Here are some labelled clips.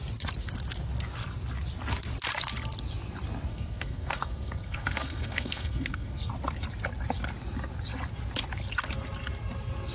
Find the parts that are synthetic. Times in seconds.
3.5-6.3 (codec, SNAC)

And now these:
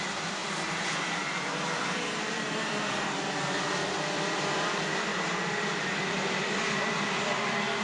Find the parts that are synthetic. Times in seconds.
0.0-7.8 (vocoder, BigVGAN v2)

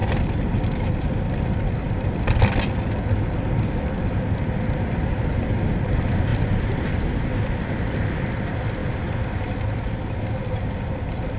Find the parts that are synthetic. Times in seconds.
none

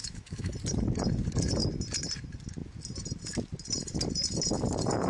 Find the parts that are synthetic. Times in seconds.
0.0-0.5 (autoencoder, DAC-VAE)

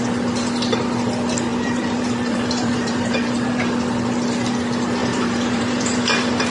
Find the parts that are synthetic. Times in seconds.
1.5-3.7 (vocoder, BigVGAN v2); 5.0-6.5

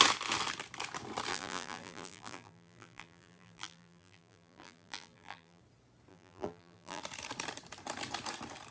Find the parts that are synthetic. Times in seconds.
1.3-5.6 (vocoder, BigVGAN v2); 6.1-7.0

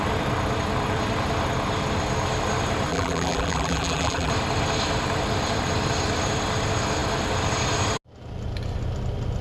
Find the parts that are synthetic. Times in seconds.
2.9-4.3 (vocoder, BigVGAN v2)